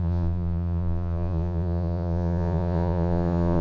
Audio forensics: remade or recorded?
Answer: remade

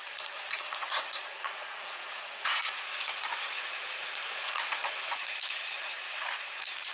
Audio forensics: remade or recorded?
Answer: remade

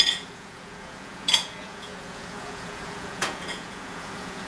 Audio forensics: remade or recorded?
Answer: remade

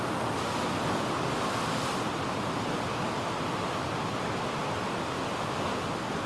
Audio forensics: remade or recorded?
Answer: recorded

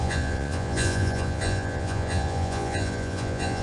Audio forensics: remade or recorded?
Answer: remade